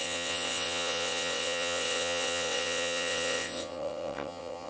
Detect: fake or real fake